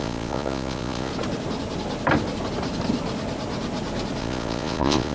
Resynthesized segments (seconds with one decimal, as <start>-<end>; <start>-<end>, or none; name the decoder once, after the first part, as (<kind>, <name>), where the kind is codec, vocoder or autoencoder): 0.0-1.1 (vocoder, Vocos); 4.2-5.1